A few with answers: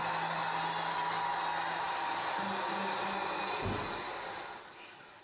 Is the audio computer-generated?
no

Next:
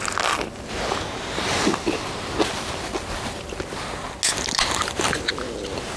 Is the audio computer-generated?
no